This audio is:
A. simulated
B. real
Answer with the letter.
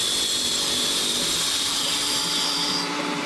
A